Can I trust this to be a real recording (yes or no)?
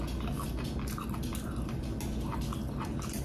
yes